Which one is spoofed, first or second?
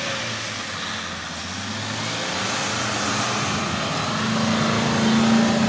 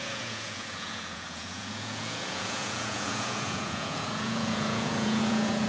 second